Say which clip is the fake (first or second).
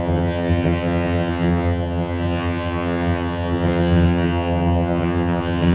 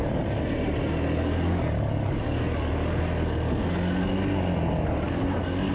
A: first